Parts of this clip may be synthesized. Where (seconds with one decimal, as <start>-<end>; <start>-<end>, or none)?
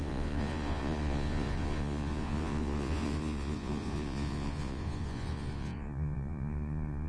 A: 0.0-7.1